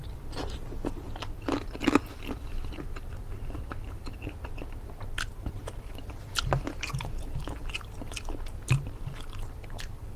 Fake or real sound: real